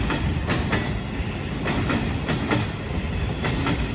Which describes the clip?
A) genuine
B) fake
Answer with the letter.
A